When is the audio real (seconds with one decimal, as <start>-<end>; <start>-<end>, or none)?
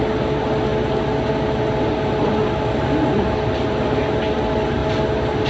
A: 0.0-5.5